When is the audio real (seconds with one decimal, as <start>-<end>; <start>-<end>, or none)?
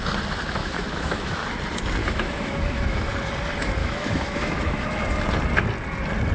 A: 0.0-0.6; 1.5-2.0; 3.1-3.8; 5.0-6.3